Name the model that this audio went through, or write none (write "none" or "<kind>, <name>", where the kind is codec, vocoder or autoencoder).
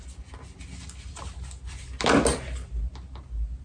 none